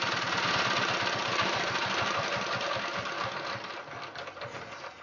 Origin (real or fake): real